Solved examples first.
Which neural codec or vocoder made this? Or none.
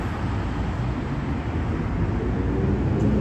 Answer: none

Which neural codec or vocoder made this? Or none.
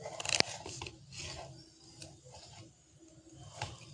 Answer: vocoder, BigVGAN v2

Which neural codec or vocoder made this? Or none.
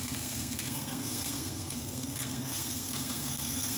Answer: codec, SNAC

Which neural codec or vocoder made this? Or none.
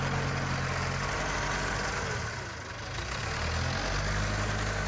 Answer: none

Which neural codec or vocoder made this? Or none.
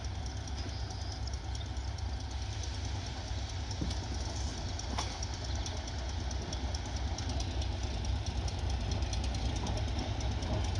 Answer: none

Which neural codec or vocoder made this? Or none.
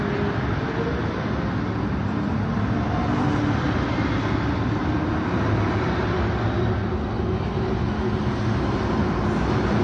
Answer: none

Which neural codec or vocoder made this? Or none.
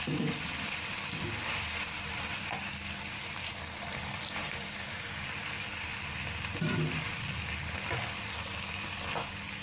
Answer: vocoder, BigVGAN v2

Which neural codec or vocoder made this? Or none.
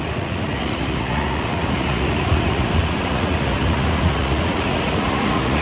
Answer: vocoder, Vocos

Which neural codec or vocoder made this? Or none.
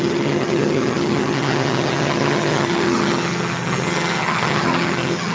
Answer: vocoder, HiFi-GAN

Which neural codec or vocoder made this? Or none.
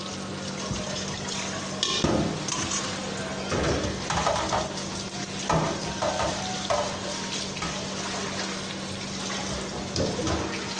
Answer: none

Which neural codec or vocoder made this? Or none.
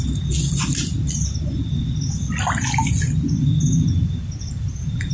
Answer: none